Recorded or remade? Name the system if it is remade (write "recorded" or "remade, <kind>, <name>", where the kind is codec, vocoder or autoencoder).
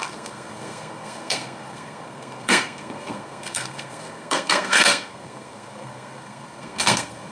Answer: remade, codec, SNAC